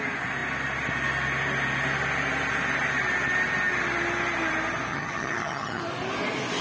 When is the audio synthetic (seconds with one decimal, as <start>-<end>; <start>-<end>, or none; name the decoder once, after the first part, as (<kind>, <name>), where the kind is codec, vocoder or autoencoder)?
4.9-5.8 (vocoder, HiFi-GAN)